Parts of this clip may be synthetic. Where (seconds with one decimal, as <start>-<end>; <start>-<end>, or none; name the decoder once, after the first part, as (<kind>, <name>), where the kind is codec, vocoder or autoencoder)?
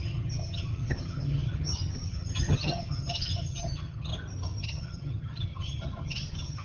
0.0-4.1 (vocoder, HiFi-GAN); 4.6-6.6